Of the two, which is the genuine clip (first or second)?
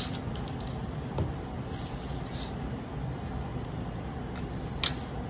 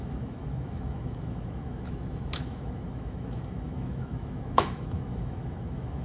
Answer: first